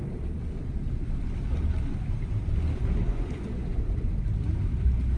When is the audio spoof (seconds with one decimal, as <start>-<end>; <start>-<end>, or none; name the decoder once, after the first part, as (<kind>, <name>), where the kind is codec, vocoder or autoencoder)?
3.0-4.1 (vocoder, Vocos)